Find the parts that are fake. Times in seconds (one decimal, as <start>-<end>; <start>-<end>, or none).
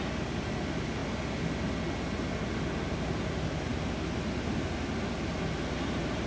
none